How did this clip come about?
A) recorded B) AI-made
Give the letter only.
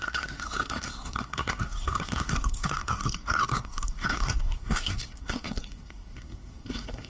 B